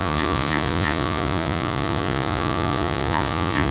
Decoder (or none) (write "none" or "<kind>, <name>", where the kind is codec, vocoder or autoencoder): vocoder, Vocos